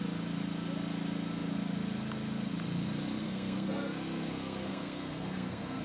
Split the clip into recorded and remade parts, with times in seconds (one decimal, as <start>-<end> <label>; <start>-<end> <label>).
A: 0.0-3.2 recorded; 3.2-5.8 remade